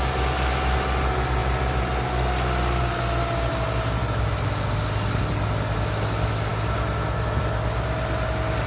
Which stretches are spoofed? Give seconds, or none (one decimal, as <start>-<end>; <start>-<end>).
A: none